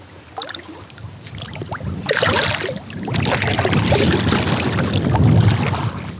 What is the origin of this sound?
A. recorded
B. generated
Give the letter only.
A